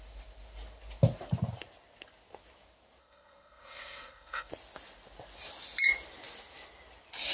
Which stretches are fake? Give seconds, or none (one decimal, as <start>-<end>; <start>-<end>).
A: 3.0-4.5